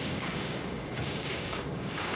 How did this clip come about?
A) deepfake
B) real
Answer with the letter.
A